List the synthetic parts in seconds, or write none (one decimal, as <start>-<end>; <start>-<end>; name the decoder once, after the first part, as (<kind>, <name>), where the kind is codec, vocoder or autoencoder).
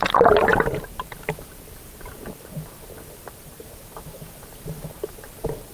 0.5-1.1 (vocoder, BigVGAN v2)